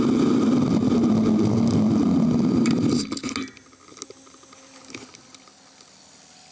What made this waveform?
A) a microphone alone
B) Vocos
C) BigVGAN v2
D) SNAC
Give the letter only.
A